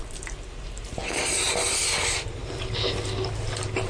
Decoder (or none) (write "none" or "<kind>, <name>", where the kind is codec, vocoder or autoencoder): none